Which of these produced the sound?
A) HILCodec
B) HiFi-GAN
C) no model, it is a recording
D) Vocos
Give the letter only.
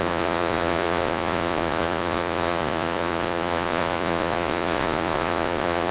D